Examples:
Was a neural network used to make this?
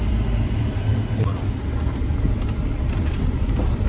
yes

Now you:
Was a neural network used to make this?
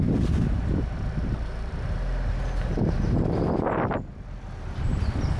no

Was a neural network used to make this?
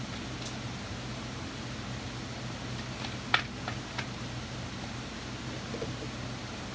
no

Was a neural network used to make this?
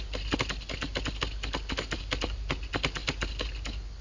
no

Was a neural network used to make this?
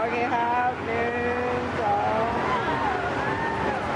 no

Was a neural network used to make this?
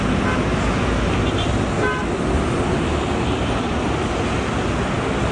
no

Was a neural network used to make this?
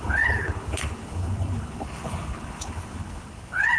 yes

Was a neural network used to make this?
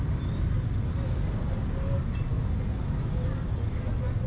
no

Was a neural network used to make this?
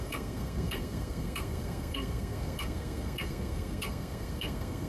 yes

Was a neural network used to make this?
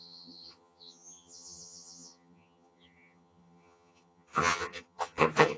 yes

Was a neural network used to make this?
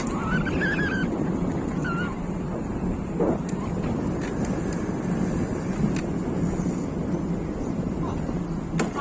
no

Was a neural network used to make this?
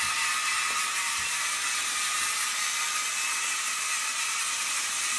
no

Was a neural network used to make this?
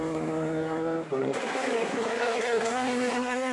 yes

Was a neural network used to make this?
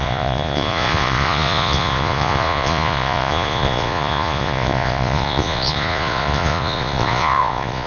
yes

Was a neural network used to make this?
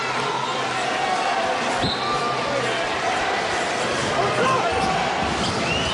no